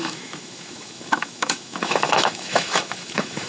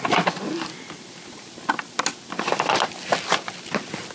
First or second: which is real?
second